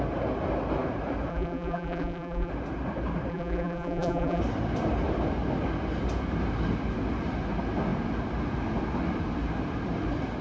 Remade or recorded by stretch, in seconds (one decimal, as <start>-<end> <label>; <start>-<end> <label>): 0.0-1.3 recorded; 1.3-2.5 remade; 2.5-3.3 recorded; 3.3-4.4 remade; 4.4-10.4 recorded